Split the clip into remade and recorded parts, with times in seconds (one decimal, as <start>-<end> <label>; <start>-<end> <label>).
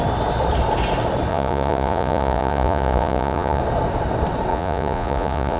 0.0-1.3 recorded; 1.3-3.6 remade; 3.6-4.5 recorded; 4.5-5.6 remade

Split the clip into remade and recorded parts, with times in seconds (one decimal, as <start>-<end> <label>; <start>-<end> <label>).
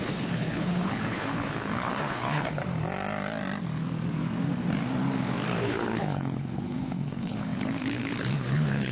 0.0-2.6 remade; 2.6-5.6 recorded; 5.6-8.9 remade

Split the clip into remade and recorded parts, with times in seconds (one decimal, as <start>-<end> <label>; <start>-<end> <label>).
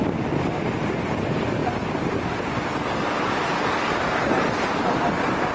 0.0-5.5 recorded